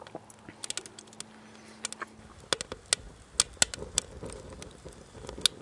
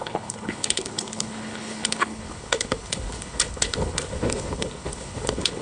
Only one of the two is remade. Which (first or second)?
second